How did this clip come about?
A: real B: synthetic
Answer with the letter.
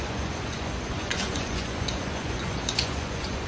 B